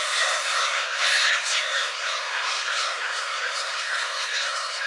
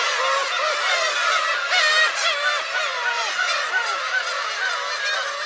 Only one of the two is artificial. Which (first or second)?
first